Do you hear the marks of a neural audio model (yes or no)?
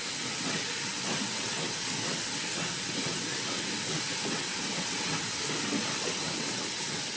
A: yes